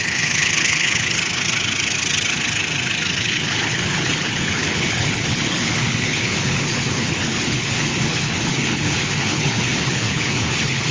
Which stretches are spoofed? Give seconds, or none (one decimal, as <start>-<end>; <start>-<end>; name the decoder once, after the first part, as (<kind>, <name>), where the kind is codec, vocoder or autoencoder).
0.0-1.2 (codec, HILCodec); 3.2-10.9